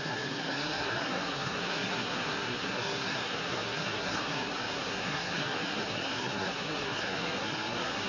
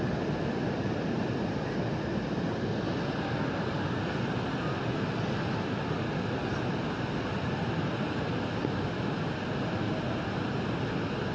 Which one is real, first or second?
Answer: second